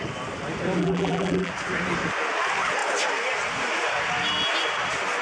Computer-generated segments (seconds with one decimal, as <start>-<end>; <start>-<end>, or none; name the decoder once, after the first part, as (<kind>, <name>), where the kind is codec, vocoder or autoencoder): 0.8-1.5 (vocoder, BigVGAN v2)